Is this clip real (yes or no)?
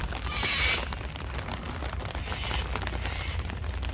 yes